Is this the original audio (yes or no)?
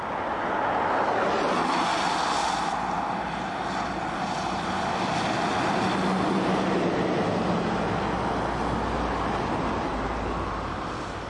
yes